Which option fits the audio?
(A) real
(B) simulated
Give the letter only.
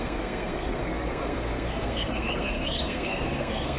B